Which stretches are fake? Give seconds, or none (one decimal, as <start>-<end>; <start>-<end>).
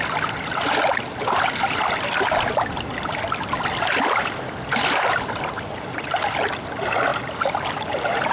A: none